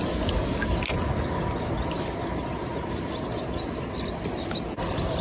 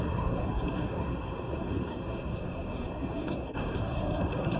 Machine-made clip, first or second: second